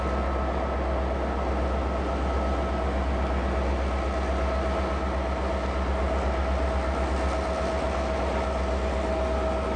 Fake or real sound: real